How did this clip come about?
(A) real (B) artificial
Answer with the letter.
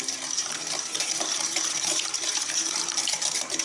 B